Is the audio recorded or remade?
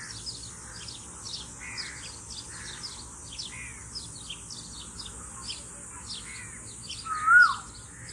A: recorded